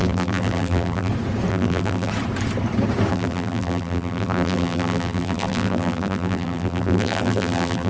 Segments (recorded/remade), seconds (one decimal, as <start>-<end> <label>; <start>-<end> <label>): 0.0-1.1 remade; 1.1-1.5 recorded; 1.5-2.1 remade; 2.1-3.1 recorded; 3.1-7.9 remade

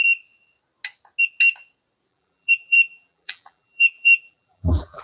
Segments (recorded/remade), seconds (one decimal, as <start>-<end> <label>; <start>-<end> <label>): 0.0-2.1 recorded; 2.1-5.0 remade

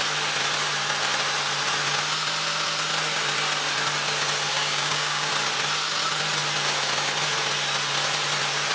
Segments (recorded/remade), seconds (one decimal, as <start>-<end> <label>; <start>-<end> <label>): 0.0-4.5 recorded; 4.5-5.3 remade; 5.3-8.7 recorded

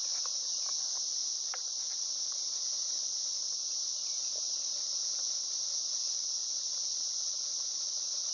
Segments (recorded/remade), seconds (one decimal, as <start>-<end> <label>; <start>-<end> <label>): 0.0-8.3 recorded

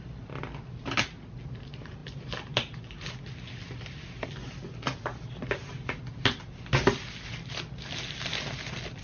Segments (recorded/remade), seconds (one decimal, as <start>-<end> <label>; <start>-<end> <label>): 0.0-9.0 recorded

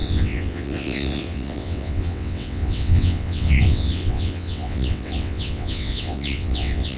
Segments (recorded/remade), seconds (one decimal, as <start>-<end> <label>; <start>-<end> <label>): 0.0-7.0 remade

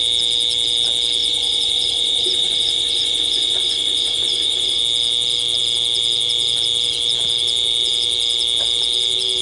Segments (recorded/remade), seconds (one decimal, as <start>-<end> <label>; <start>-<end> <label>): 0.0-1.2 recorded; 1.2-4.8 remade; 4.8-9.4 recorded